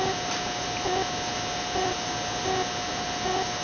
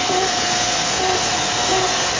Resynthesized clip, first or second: second